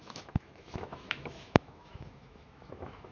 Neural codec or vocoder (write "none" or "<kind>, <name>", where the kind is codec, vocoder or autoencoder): autoencoder, DAC-VAE